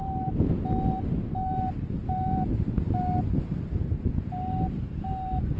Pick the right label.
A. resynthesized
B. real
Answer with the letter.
B